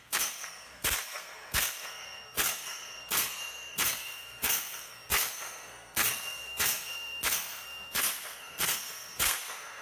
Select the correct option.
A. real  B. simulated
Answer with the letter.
B